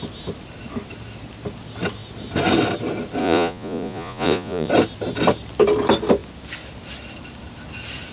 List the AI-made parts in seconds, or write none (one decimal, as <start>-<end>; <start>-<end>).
3.2-4.7